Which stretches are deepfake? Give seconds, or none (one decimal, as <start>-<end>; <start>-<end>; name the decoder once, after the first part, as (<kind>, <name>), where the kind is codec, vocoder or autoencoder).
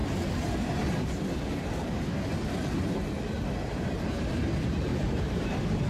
4.9-5.5 (vocoder, BigVGAN v2)